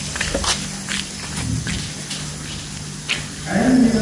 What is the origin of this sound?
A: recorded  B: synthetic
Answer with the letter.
A